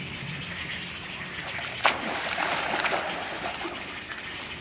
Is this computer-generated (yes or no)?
no